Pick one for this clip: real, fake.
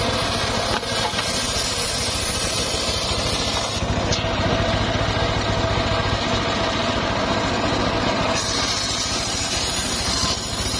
real